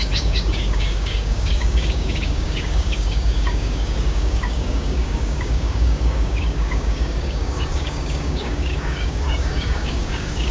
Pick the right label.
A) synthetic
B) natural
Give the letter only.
A